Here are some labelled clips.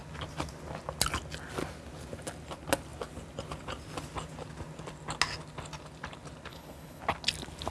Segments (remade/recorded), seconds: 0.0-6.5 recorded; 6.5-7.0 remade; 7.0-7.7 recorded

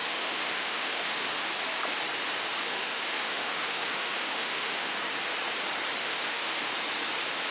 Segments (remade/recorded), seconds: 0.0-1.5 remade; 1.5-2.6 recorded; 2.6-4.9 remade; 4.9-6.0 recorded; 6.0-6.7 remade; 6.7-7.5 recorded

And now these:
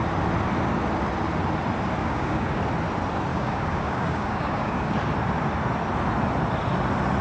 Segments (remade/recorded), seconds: 0.0-2.0 recorded; 2.0-2.6 remade; 2.6-3.3 recorded; 3.3-4.9 remade; 4.9-7.2 recorded

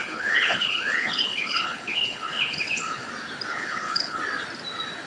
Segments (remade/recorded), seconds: 0.0-3.1 remade; 3.1-3.5 recorded; 3.5-4.2 remade; 4.2-5.1 recorded